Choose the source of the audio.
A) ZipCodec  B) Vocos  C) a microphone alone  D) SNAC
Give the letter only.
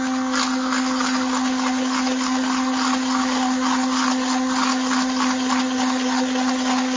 C